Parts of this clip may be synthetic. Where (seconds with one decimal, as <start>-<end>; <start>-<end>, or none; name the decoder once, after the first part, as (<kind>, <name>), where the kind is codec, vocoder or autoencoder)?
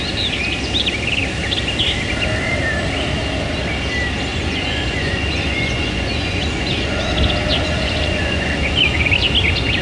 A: 4.3-7.0 (vocoder, Vocos); 7.5-9.1